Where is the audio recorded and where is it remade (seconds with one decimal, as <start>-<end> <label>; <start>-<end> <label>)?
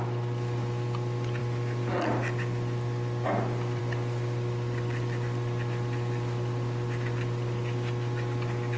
0.0-8.8 recorded